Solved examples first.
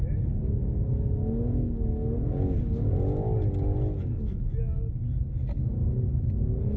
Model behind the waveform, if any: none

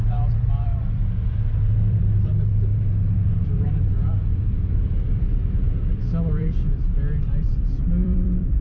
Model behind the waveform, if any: vocoder, BigVGAN v2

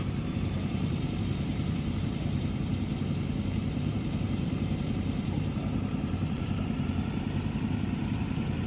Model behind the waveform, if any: vocoder, BigVGAN v2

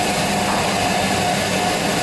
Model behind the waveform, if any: none